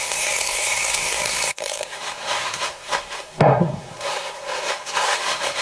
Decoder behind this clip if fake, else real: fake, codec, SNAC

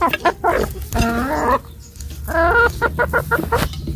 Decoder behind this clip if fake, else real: real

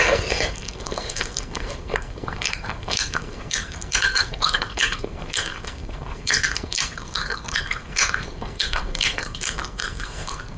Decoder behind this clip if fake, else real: fake, codec, SNAC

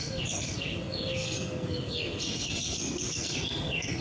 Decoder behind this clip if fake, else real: fake, codec, SNAC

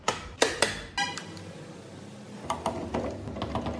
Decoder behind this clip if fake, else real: real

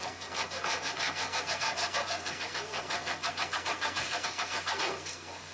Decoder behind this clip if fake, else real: fake, codec, SNAC